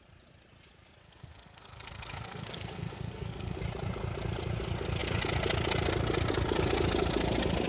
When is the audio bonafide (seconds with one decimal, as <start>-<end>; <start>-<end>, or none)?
0.0-1.0; 3.6-7.7